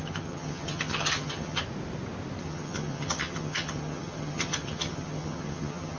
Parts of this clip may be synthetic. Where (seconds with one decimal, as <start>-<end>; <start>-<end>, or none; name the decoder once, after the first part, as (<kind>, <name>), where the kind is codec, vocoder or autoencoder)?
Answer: 0.0-1.6 (vocoder, HiFi-GAN); 2.4-6.0